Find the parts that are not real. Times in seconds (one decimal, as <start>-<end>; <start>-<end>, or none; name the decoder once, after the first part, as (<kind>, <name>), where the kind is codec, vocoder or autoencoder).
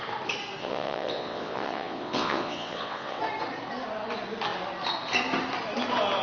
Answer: 0.6-3.2 (vocoder, WaveNeXt)